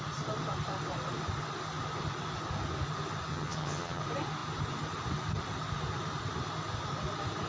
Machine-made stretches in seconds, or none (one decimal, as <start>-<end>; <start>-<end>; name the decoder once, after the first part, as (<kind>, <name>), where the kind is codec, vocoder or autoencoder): 3.3-4.0 (vocoder, HiFi-GAN)